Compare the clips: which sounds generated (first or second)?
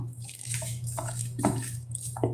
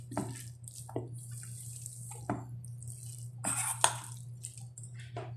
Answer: first